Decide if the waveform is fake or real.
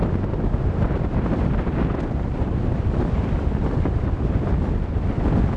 real